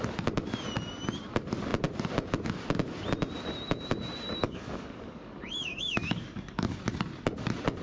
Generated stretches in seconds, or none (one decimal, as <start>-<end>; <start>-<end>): 4.4-6.8